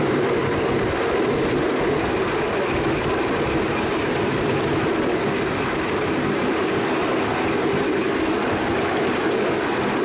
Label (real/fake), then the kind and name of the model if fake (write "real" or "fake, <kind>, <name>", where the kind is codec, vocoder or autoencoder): real